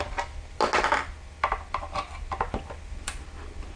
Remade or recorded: recorded